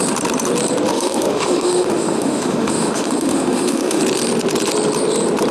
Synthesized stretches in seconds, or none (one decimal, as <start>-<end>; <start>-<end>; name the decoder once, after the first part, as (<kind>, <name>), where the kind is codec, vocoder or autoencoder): 0.9-4.0 (autoencoder, DAC-VAE)